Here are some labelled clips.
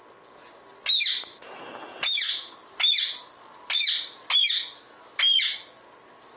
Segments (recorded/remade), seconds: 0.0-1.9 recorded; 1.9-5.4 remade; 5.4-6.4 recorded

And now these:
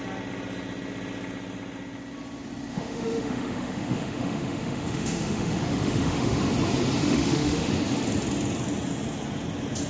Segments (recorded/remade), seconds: 0.0-2.7 recorded; 2.7-6.4 remade; 6.4-7.0 recorded; 7.0-7.7 remade; 7.7-9.9 recorded

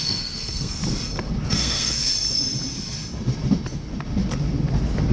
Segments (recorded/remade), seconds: 0.0-0.8 remade; 0.8-1.5 recorded; 1.5-2.1 remade; 2.1-5.1 recorded

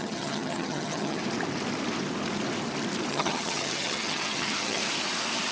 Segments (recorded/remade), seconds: 0.0-1.2 remade; 1.2-3.1 recorded; 3.1-4.8 remade; 4.8-5.5 recorded

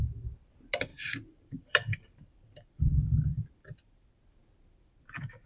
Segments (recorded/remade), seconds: 0.0-0.9 recorded; 0.9-4.1 remade; 4.1-5.5 recorded

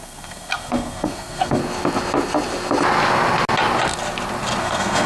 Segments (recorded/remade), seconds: 0.0-1.6 remade; 1.6-4.6 recorded; 4.6-5.1 remade

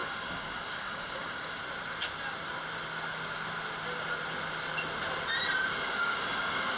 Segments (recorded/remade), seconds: 0.0-1.6 remade; 1.6-5.7 recorded; 5.7-6.8 remade

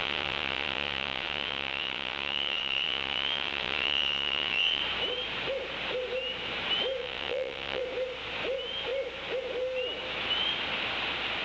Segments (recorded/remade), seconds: 0.0-4.8 remade; 4.8-7.0 recorded; 7.0-7.8 remade; 7.8-11.4 recorded